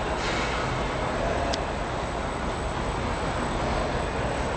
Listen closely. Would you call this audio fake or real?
real